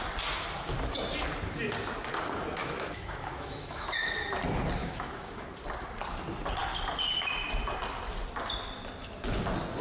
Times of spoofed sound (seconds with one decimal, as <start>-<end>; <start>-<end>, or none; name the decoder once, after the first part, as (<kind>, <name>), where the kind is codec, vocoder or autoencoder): 2.6-3.9 (autoencoder, DAC-VAE); 4.8-5.5